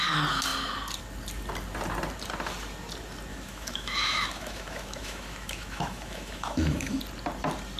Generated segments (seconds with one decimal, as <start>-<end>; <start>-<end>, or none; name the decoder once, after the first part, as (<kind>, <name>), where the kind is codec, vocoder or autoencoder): 3.3-7.0 (autoencoder, DAC-VAE)